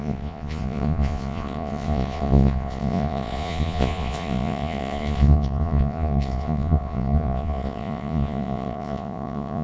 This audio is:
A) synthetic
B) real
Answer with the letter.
A